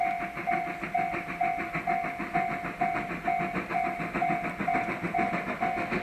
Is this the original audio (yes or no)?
yes